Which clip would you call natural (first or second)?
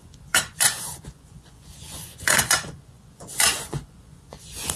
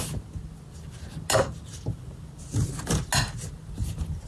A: second